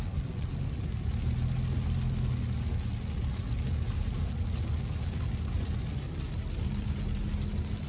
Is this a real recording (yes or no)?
yes